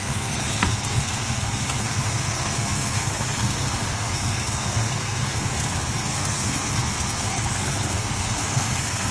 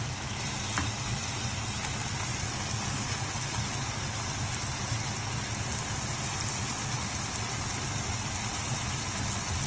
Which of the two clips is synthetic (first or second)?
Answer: first